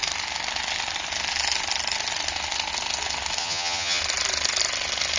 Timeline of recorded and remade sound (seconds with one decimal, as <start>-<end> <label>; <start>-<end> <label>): 0.0-3.4 recorded; 3.4-4.0 remade; 4.0-5.2 recorded